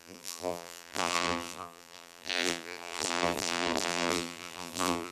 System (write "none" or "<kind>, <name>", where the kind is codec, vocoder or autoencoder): vocoder, BigVGAN v2